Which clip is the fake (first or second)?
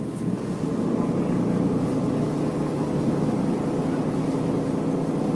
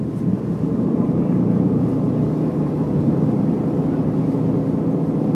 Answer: second